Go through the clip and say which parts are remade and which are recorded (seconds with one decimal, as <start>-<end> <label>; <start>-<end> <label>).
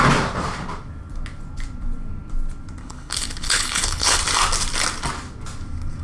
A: 0.0-2.8 recorded; 2.8-4.2 remade; 4.2-6.0 recorded